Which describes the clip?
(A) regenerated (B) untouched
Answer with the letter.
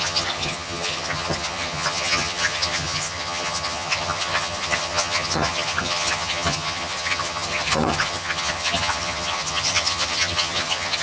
A